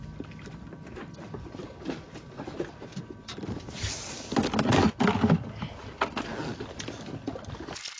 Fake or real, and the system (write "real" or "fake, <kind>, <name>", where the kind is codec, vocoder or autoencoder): real